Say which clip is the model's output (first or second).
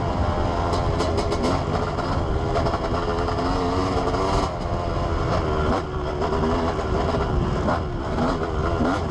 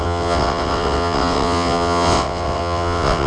second